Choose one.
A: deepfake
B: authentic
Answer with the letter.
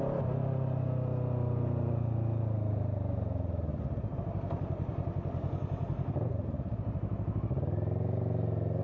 B